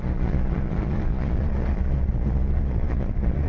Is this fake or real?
fake